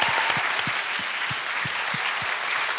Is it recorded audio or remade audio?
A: recorded